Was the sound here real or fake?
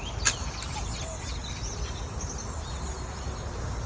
real